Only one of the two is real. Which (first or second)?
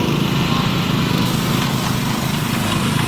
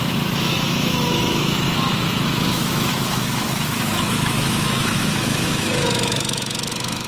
first